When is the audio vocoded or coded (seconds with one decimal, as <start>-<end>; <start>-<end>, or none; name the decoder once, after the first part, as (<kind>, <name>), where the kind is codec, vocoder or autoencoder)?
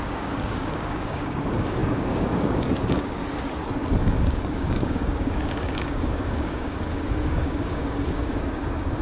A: 0.0-3.2 (codec, DAC); 4.0-9.0